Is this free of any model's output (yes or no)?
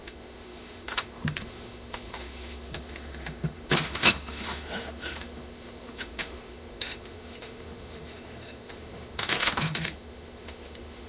no